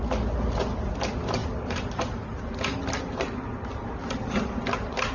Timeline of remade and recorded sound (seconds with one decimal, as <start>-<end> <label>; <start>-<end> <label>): 0.0-5.1 recorded